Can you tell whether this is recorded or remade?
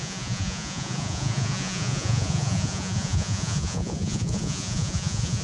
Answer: remade